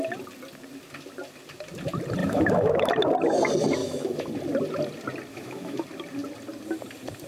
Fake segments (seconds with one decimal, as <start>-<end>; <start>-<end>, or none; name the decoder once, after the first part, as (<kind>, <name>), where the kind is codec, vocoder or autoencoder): 2.2-2.9 (autoencoder, DAC-VAE); 3.8-4.3; 5.3-5.8